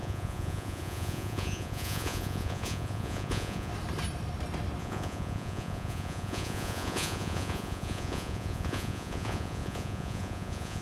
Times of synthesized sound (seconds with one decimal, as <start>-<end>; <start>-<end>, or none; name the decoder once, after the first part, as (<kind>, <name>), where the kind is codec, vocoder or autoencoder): 0.0-3.7 (vocoder, Vocos); 4.8-10.8

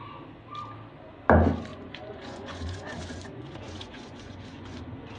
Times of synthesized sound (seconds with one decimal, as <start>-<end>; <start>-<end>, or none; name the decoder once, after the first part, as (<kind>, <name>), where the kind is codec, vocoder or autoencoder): 1.7-4.8 (vocoder, Vocos)

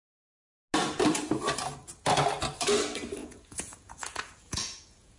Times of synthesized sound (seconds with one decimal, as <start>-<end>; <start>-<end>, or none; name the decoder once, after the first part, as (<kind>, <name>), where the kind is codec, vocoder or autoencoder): 3.2-5.2 (vocoder, Vocos)

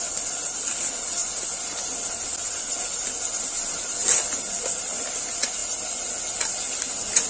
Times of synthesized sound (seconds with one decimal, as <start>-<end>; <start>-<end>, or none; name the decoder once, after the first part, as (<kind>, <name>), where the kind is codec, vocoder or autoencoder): none

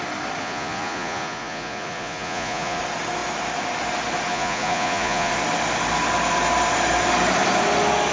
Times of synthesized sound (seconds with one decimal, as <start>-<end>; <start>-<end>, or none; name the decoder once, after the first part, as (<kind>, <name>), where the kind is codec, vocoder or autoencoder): 0.4-2.8 (vocoder, Vocos); 4.3-5.3